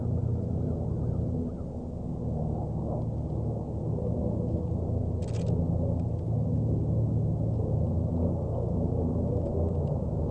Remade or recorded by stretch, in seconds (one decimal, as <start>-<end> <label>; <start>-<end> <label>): 0.0-10.3 recorded